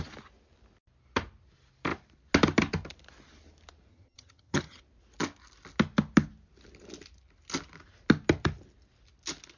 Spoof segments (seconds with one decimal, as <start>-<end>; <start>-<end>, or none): 3.9-4.8